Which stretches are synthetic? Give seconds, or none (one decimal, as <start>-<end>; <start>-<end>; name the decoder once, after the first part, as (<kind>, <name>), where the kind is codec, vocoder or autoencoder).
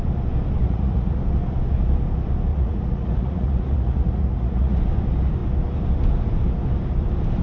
0.6-1.2 (vocoder, Vocos); 2.5-4.8